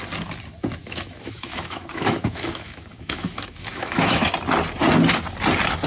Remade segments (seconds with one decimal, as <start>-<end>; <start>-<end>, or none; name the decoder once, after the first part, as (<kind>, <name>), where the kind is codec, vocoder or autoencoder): 0.8-4.3 (autoencoder, DAC-VAE)